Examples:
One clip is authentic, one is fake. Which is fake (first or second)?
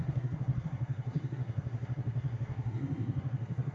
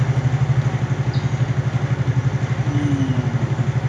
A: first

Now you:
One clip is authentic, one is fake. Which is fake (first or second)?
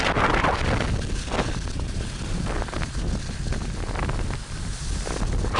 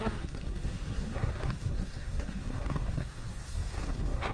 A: second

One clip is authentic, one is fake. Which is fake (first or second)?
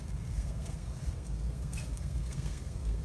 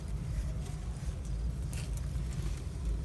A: first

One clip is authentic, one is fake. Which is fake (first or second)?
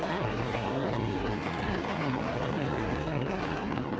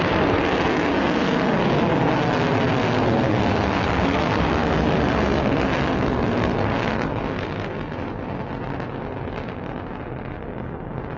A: first